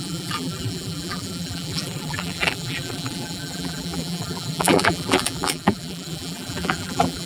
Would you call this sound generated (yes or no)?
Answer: yes